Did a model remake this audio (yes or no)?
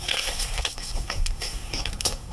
yes